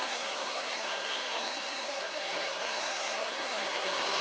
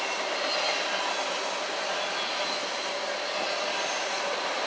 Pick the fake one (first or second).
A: first